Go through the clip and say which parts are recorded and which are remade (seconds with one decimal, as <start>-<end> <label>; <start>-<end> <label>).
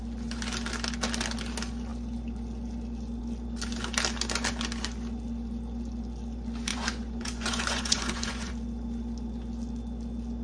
0.0-6.7 recorded; 6.7-8.5 remade; 8.5-10.4 recorded